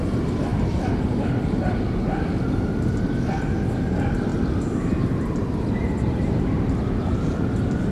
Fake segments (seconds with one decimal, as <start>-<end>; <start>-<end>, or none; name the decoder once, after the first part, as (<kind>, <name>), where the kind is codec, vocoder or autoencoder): none